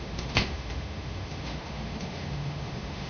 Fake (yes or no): yes